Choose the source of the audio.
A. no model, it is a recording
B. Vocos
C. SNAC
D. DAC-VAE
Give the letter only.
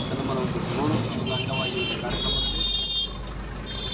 A